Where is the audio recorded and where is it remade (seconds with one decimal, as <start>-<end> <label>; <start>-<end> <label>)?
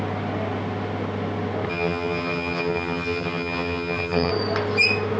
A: 0.0-1.7 recorded; 1.7-4.3 remade; 4.3-5.2 recorded